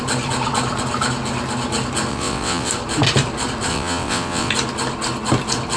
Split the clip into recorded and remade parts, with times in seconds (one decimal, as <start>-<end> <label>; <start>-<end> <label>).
0.0-2.1 recorded; 2.1-2.7 remade; 2.7-3.7 recorded; 3.7-4.5 remade; 4.5-5.8 recorded